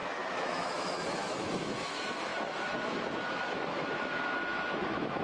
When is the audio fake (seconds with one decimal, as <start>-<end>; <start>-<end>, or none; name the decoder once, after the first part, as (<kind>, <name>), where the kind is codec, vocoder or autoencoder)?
0.0-5.2 (autoencoder, DAC-VAE)